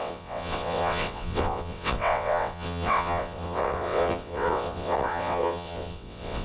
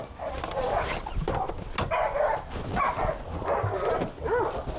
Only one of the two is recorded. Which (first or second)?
second